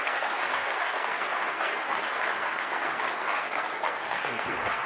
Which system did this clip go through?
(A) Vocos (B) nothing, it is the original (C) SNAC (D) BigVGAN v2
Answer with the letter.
C